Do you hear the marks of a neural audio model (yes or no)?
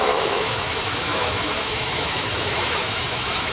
yes